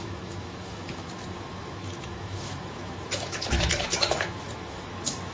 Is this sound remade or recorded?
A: remade